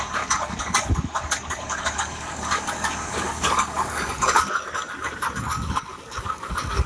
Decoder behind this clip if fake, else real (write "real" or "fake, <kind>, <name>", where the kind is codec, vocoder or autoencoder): fake, codec, DAC